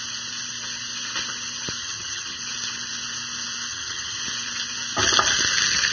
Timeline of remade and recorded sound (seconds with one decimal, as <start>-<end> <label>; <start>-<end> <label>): 0.0-1.8 recorded; 1.8-2.4 remade; 2.4-3.7 recorded; 3.7-4.2 remade; 4.2-5.9 recorded

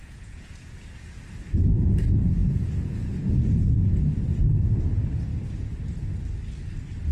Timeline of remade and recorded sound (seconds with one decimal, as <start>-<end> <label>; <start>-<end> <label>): 0.0-1.2 remade; 1.2-2.4 recorded; 2.4-3.9 remade; 3.9-7.1 recorded

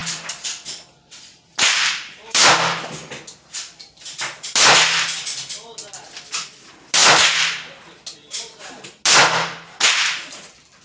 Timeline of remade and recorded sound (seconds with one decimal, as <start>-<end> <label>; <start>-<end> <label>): 0.0-2.4 remade; 2.4-10.8 recorded

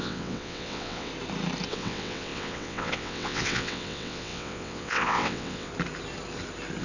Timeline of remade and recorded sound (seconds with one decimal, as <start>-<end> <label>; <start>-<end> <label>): 0.0-1.1 remade; 1.1-1.7 recorded; 1.7-5.7 remade; 5.7-6.8 recorded